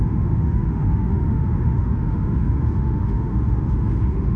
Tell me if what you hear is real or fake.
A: fake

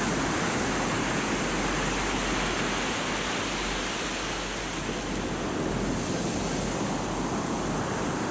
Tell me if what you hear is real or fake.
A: real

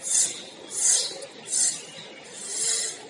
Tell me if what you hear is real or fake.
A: real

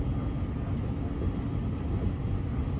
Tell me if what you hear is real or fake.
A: real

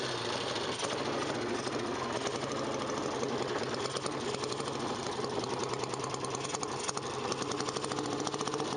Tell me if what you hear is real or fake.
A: real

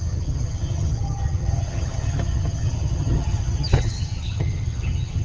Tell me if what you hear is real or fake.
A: fake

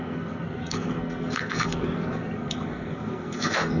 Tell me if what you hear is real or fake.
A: fake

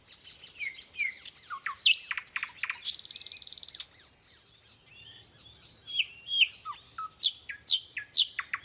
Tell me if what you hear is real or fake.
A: real